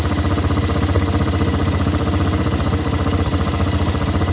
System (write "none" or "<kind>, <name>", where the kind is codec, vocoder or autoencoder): none